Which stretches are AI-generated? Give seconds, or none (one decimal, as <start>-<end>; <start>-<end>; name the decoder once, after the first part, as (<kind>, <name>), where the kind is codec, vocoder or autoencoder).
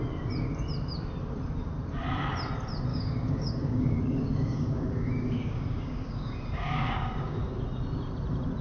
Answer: 2.9-7.4 (codec, DAC)